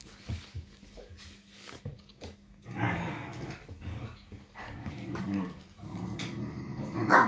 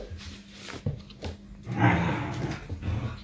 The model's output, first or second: first